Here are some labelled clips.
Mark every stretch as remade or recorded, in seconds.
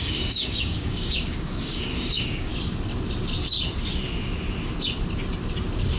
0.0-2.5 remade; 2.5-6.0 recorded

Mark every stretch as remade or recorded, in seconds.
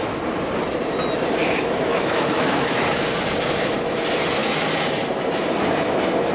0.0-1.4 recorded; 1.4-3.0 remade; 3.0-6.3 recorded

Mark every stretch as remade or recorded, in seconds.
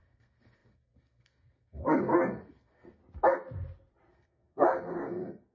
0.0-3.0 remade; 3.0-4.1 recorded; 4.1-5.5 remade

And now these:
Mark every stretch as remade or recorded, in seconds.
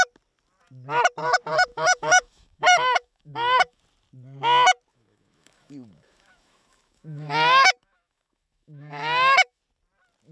0.0-1.7 recorded; 1.7-3.8 remade; 3.8-4.9 recorded; 4.9-9.6 remade; 9.6-10.3 recorded